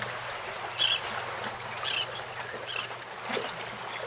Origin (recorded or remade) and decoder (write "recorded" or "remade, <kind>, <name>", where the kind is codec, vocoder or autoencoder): recorded